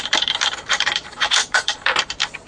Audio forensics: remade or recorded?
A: remade